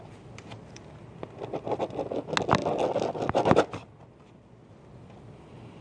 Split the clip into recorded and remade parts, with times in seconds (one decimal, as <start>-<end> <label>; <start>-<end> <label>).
0.0-5.8 recorded